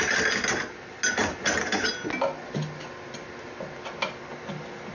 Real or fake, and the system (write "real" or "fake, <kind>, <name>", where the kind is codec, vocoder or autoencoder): real